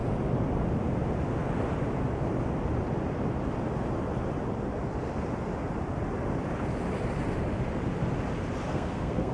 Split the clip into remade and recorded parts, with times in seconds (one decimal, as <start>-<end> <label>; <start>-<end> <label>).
0.0-8.7 recorded; 8.7-9.3 remade

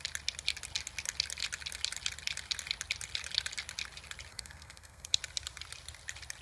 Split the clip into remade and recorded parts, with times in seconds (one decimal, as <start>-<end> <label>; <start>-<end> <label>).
0.0-4.3 recorded; 4.3-5.2 remade; 5.2-6.4 recorded

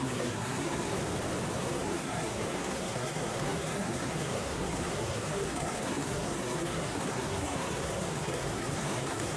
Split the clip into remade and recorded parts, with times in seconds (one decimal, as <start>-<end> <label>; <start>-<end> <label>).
0.0-1.0 remade; 1.0-1.5 recorded; 1.5-9.4 remade

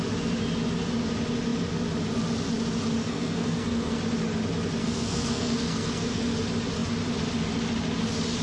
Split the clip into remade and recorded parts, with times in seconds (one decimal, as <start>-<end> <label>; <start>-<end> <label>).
0.0-3.0 recorded; 3.0-4.0 remade; 4.0-4.8 recorded; 4.8-6.2 remade; 6.2-8.4 recorded

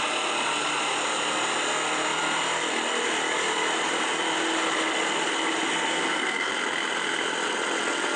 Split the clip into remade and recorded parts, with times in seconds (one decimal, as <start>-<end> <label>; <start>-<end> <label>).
0.0-5.7 recorded; 5.7-6.5 remade; 6.5-8.2 recorded

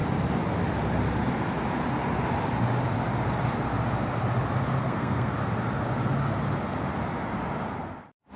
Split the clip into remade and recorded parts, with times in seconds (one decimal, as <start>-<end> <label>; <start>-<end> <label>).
0.0-4.8 recorded; 4.8-5.3 remade; 5.3-8.4 recorded